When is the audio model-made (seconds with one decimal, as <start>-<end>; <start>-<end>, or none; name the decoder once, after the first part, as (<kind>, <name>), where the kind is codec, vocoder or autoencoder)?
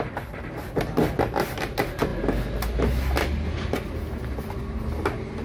none